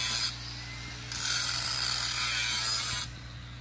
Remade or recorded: recorded